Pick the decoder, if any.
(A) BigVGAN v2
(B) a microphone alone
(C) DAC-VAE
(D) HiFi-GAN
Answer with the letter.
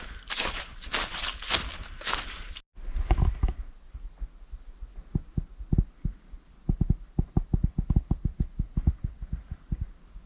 B